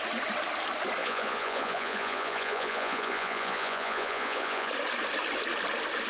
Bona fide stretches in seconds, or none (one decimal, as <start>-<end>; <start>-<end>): 0.0-1.0; 4.7-6.1